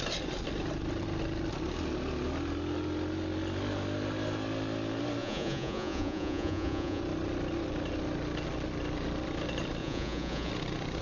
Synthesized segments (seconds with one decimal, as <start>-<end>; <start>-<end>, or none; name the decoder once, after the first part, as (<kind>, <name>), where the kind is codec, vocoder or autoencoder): 5.2-7.0 (vocoder, Vocos); 9.8-10.5